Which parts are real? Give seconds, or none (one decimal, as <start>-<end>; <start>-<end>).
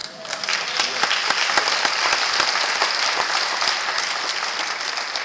0.0-5.2